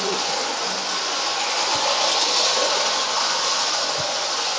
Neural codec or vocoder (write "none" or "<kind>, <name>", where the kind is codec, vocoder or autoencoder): vocoder, Vocos